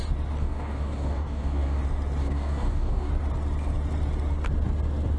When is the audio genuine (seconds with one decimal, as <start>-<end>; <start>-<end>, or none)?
0.0-0.4; 1.8-2.2; 3.1-5.2